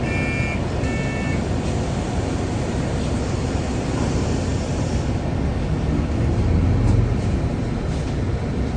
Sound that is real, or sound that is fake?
real